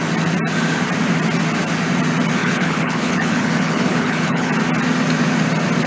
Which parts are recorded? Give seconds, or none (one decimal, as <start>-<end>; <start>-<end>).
0.0-2.4; 4.5-5.9